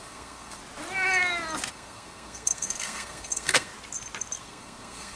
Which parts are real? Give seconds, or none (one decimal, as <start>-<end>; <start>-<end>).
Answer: 0.6-1.7; 3.7-4.4